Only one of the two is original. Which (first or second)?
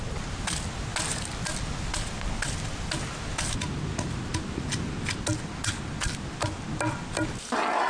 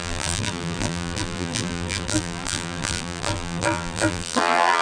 first